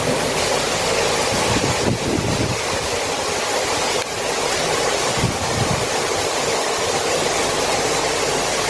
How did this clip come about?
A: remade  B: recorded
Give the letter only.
B